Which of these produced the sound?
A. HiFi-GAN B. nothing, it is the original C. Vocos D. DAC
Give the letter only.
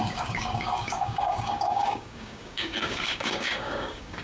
D